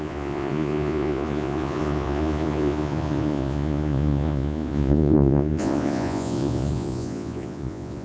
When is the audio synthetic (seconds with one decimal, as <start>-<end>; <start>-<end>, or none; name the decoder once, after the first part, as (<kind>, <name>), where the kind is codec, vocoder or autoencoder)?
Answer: 0.0-8.0 (vocoder, Vocos)